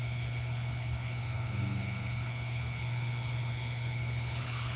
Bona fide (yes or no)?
no